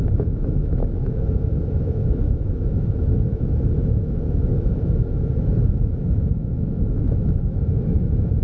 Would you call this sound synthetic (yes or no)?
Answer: yes